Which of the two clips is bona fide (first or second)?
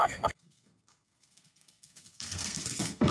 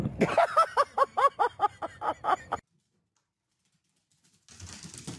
second